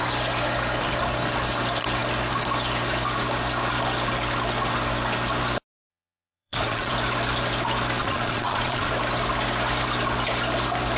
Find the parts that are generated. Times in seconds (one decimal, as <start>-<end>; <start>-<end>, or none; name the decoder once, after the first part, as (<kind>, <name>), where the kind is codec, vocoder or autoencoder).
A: 5.9-6.9 (vocoder, Vocos); 8.0-8.9